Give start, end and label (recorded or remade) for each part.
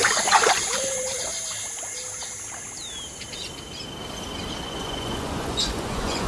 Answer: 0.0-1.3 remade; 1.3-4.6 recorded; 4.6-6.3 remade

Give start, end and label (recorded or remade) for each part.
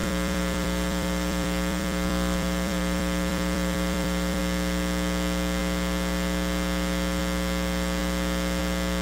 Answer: 0.0-4.4 remade; 4.4-9.0 recorded